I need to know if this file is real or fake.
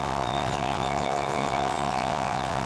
fake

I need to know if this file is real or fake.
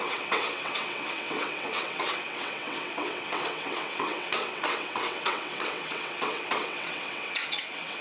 fake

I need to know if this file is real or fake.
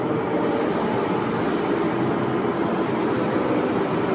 real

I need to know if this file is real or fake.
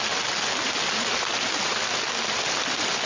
real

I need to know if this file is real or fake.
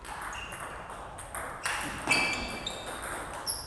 real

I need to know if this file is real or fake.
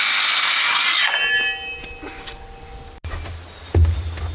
real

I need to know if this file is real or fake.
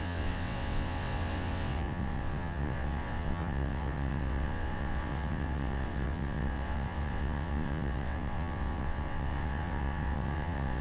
fake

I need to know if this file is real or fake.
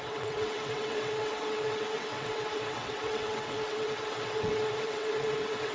fake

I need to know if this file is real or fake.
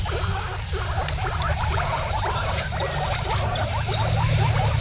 real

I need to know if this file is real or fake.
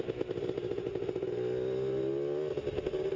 real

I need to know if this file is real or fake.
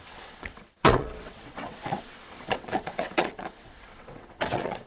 fake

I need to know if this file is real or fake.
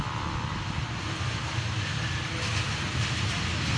real